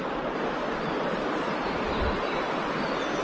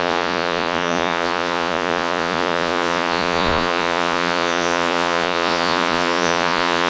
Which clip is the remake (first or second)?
second